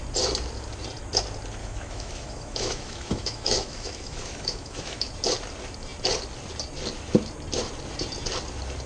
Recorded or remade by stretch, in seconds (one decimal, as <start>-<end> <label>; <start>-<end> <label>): 0.0-1.6 recorded; 1.6-5.1 remade; 5.1-8.9 recorded